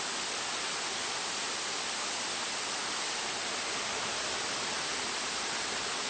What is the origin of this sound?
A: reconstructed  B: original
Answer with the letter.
B